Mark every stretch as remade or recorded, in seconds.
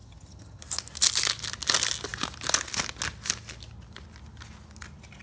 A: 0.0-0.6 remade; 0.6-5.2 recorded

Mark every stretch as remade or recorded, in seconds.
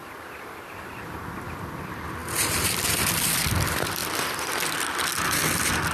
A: 0.0-2.2 recorded; 2.2-3.4 remade; 3.4-5.9 recorded